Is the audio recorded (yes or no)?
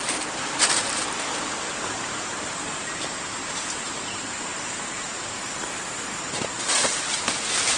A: no